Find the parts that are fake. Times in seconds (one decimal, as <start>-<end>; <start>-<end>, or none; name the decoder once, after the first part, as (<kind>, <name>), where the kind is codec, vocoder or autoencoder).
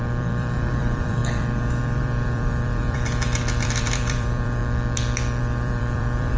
0.0-4.6 (vocoder, BigVGAN v2); 5.4-6.4